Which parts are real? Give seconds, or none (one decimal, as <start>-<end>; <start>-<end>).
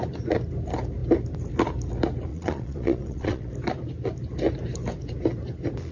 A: 0.0-2.3; 3.5-5.9